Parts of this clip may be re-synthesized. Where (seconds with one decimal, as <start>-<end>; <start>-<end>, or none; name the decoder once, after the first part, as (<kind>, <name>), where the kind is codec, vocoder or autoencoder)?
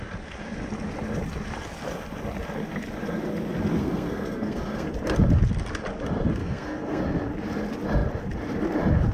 3.8-4.9 (codec, SNAC); 6.4-7.0